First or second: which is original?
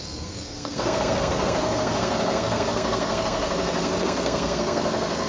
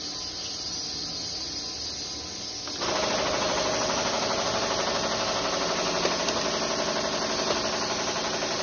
second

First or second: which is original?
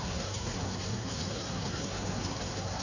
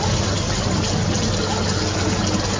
second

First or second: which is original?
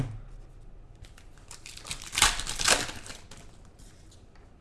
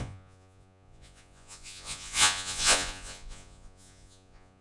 first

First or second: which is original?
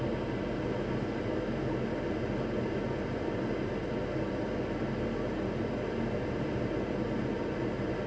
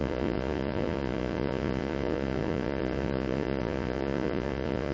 first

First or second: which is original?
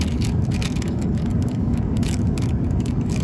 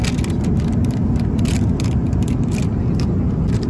second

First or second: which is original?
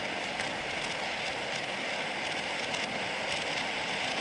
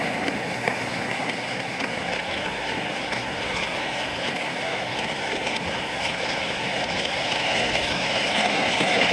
first